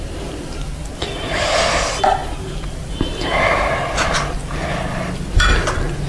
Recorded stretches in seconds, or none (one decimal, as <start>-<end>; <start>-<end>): 4.4-5.0